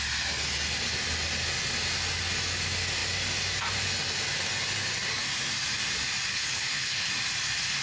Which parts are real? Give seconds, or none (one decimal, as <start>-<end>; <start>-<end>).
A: 0.0-6.3; 7.1-7.8